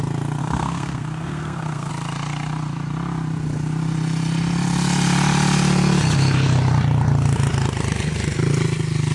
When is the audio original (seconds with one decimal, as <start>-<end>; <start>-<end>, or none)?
0.0-0.4; 1.9-9.1